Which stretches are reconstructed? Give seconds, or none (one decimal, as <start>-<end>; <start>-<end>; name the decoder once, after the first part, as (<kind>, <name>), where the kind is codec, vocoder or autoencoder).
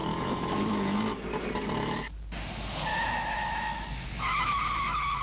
0.0-1.0 (autoencoder, DAC-VAE); 2.9-5.2